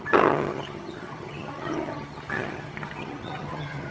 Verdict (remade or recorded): remade